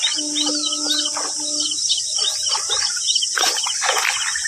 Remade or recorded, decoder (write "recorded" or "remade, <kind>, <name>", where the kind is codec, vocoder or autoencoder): recorded